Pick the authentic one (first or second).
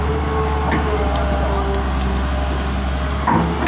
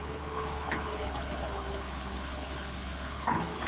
first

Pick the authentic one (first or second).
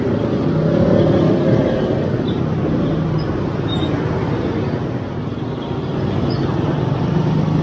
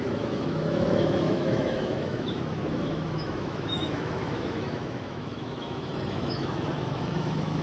first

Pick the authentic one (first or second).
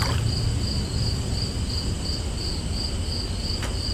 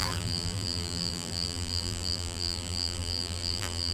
first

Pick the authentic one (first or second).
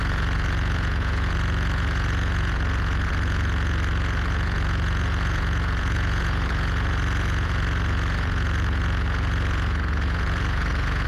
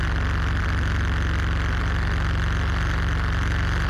second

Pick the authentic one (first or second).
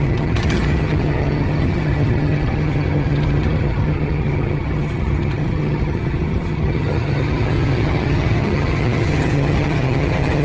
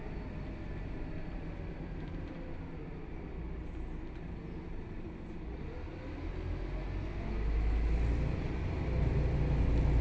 second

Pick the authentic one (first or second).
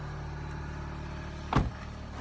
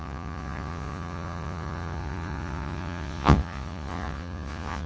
first